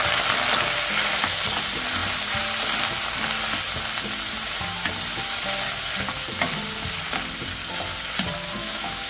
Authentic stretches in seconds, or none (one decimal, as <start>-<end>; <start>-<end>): 0.0-8.6